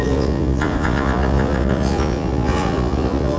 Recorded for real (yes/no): no